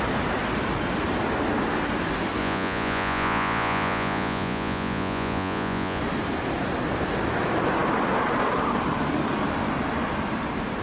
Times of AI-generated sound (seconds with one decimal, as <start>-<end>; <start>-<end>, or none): 2.4-6.0